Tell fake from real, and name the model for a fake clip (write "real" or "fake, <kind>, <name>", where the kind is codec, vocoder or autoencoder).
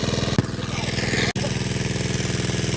real